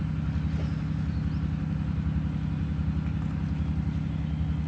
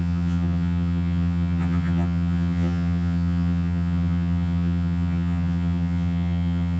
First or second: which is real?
first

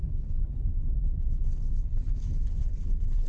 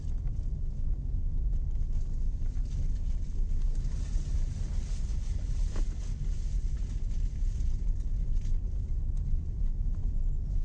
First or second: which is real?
second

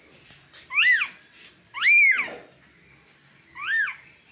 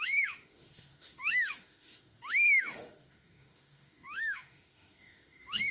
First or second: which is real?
first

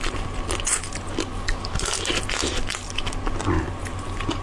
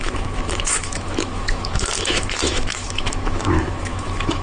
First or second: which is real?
first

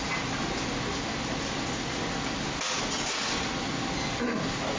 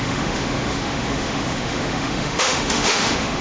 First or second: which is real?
first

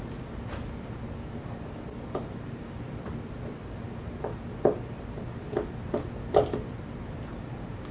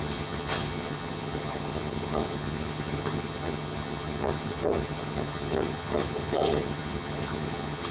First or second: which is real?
first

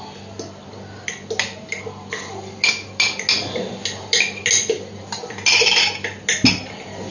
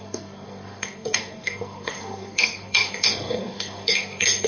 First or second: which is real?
first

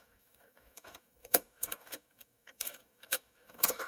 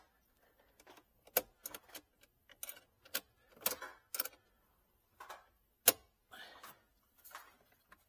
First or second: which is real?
second